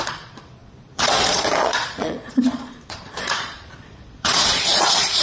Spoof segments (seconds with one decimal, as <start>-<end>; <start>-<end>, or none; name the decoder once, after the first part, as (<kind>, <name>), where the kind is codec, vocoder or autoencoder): 0.0-5.2 (vocoder, Vocos)